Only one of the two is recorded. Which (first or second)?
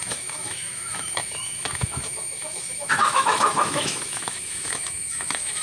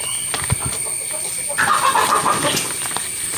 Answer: second